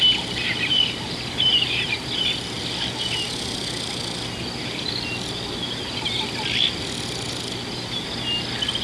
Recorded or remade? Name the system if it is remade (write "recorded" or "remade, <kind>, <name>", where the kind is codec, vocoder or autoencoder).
recorded